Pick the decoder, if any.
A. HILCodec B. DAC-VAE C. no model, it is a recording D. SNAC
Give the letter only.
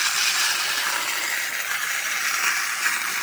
C